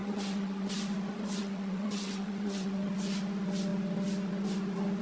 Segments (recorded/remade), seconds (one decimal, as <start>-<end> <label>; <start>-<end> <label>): 0.0-0.7 remade; 0.7-1.4 recorded; 1.4-2.9 remade; 2.9-5.0 recorded